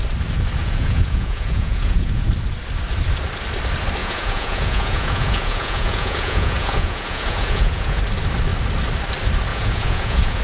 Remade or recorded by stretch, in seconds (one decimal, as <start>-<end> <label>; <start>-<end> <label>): 0.0-0.6 recorded; 0.6-2.3 remade; 2.3-4.0 recorded; 4.0-8.0 remade; 8.0-9.5 recorded; 9.5-10.4 remade